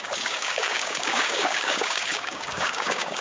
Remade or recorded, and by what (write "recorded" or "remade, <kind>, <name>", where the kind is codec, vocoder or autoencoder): remade, codec, DAC